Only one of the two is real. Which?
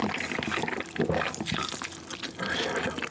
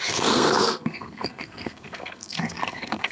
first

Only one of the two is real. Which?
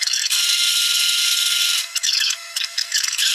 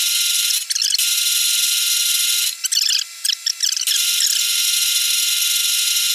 second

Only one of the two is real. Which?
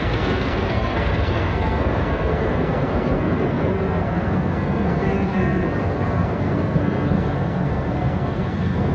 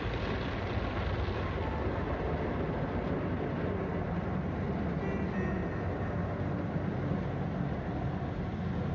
second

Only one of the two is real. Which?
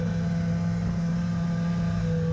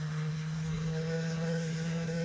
first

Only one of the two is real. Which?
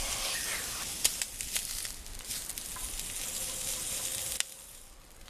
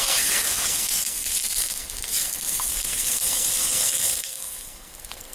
first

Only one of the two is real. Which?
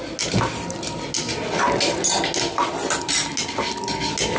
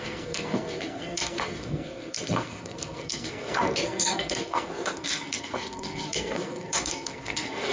first